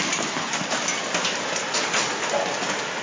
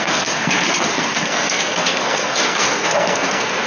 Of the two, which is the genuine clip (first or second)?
first